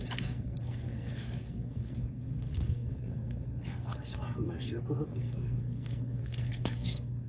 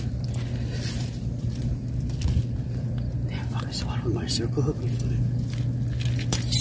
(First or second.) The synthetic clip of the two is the first